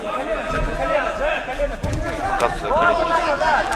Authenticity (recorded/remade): remade